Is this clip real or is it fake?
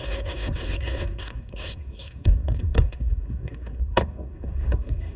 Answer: fake